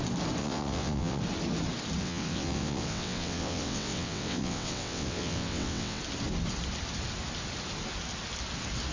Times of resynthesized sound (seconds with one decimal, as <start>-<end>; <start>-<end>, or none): 0.4-1.2; 2.0-6.0